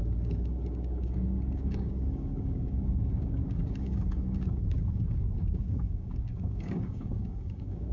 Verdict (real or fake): fake